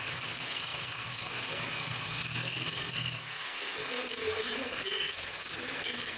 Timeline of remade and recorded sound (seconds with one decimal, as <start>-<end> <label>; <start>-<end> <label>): 0.0-6.2 remade